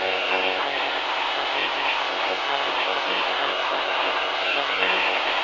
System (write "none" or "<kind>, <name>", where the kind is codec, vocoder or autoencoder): codec, SNAC